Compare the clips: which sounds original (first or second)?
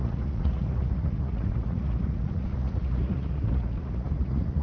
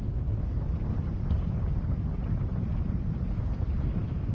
second